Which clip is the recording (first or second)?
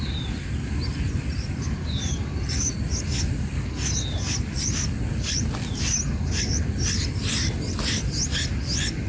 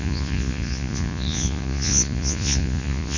first